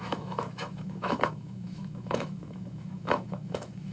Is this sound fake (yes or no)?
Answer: yes